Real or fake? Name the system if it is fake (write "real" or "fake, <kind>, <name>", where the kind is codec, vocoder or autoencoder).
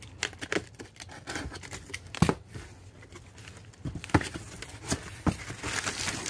real